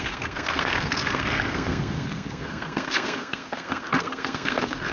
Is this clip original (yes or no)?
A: no